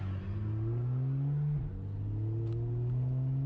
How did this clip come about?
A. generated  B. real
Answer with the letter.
B